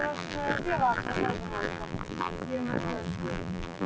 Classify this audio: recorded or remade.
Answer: remade